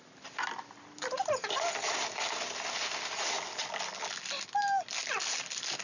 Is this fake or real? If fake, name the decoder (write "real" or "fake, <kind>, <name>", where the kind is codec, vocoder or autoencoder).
real